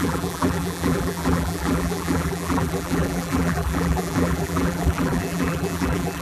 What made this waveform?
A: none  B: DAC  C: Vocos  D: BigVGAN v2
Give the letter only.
D